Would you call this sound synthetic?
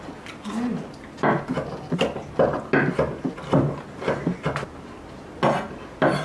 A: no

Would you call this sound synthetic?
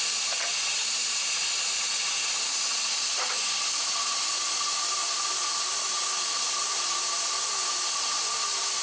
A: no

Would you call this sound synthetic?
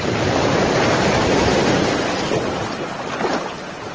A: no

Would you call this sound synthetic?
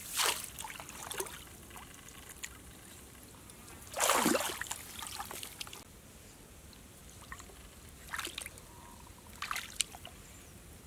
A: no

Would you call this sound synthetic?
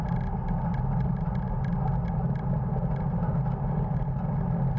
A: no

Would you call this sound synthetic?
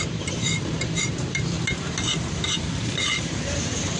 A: yes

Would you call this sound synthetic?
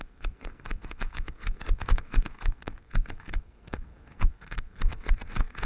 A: yes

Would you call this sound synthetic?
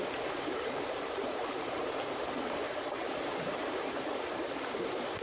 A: yes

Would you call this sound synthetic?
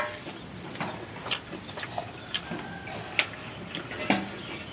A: no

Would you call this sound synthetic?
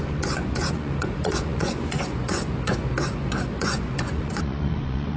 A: yes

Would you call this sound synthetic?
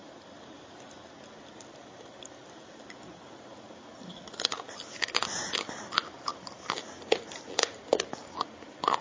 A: no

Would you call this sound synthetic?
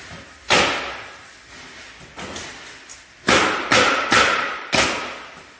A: no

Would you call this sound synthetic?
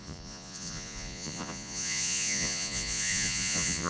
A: yes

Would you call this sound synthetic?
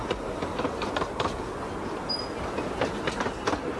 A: no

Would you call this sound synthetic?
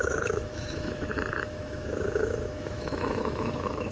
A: yes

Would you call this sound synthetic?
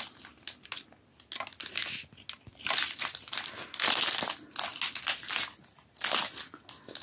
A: no